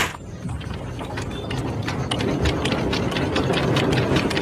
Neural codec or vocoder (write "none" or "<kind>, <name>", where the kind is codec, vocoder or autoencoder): none